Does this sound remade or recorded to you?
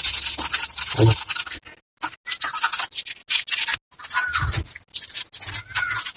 recorded